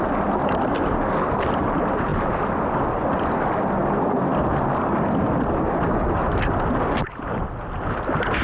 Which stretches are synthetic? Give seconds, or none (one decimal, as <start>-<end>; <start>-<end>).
none